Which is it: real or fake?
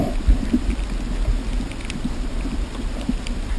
fake